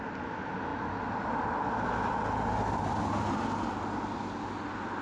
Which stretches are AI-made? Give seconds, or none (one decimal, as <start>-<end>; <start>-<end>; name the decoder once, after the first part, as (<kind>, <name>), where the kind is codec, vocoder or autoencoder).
none